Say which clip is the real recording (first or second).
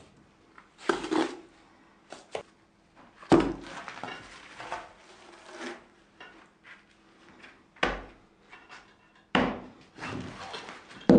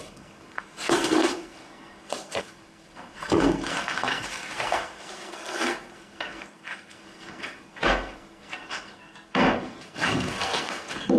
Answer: first